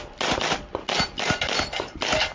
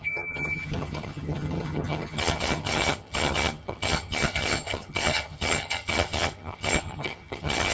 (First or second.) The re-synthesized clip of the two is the second